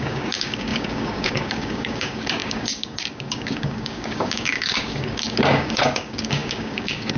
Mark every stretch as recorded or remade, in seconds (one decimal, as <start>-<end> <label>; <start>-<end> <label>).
0.0-7.2 remade